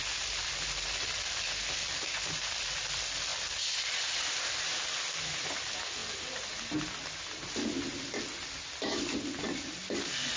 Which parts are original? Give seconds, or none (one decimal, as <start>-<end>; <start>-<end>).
0.0-10.4